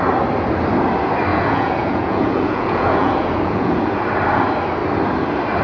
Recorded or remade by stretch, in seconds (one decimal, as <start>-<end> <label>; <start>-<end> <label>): 0.0-1.3 recorded; 1.3-3.9 remade; 3.9-5.6 recorded